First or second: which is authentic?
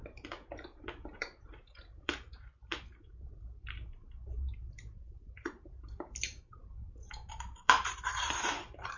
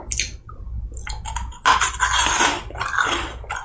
second